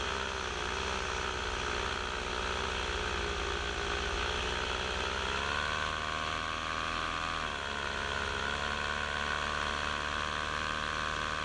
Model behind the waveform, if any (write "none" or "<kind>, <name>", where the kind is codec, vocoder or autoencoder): none